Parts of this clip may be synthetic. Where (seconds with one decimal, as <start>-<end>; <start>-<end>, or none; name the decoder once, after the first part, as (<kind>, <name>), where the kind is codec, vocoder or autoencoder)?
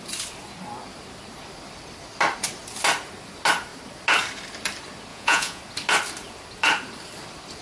5.1-5.6 (vocoder, Vocos)